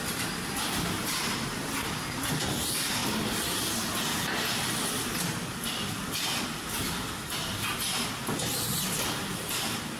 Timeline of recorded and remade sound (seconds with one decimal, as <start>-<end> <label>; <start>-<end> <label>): 0.0-10.0 recorded